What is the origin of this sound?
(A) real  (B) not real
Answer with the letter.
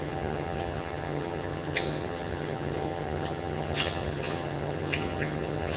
B